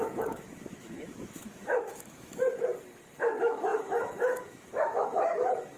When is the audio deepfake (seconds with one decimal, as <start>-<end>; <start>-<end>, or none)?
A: 0.0-2.7; 3.2-5.8